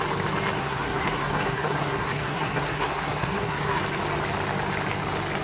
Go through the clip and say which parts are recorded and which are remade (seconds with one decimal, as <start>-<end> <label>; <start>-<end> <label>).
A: 0.0-0.6 recorded; 0.6-3.8 remade; 3.8-5.4 recorded